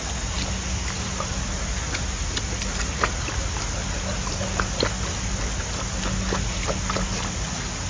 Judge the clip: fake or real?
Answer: real